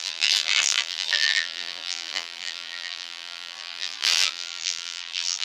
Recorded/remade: remade